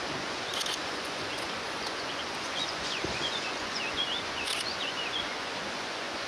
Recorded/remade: remade